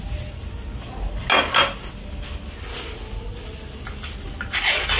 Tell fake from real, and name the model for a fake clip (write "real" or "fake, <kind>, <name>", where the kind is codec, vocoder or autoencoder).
real